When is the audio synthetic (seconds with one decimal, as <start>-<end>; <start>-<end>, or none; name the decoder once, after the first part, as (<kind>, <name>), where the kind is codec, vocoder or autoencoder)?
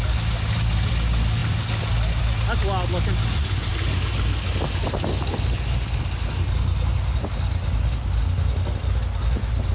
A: none